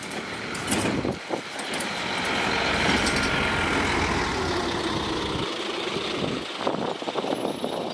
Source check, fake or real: real